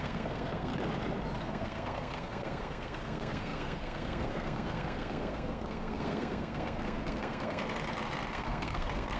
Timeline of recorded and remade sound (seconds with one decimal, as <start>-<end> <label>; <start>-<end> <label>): 0.0-0.7 remade; 0.7-1.4 recorded; 1.4-7.6 remade; 7.6-8.3 recorded; 8.3-9.2 remade